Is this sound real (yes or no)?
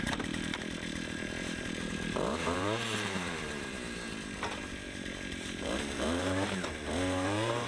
no